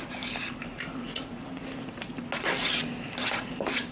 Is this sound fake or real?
real